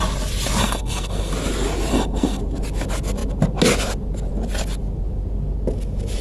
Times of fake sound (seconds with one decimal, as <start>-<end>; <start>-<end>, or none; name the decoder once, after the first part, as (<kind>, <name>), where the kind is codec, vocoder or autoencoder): 0.6-1.3 (codec, SNAC); 1.9-2.4